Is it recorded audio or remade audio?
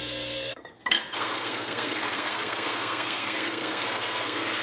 remade